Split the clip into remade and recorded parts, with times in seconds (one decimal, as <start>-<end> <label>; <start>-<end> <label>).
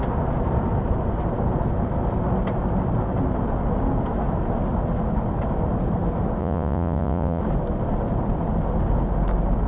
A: 0.0-6.4 recorded; 6.4-7.4 remade; 7.4-9.7 recorded